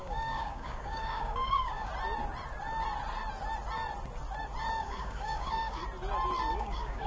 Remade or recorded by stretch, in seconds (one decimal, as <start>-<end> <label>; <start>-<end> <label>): 0.0-1.9 remade; 1.9-4.8 recorded; 4.8-5.8 remade; 5.8-6.5 recorded; 6.5-7.1 remade